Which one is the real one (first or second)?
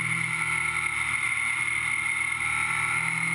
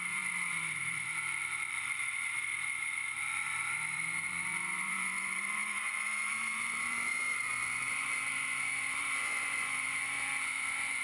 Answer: first